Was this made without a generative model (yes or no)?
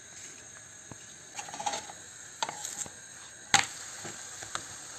yes